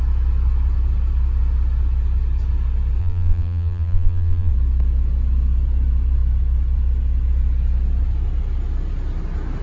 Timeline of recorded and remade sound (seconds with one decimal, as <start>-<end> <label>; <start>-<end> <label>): 0.0-3.0 recorded; 3.0-4.5 remade; 4.5-9.6 recorded